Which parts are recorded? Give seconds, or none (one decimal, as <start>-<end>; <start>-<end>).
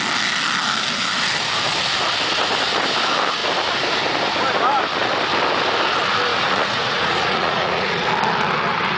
0.0-6.3; 8.1-9.0